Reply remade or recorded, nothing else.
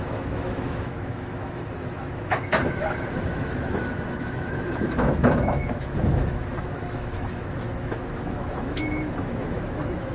remade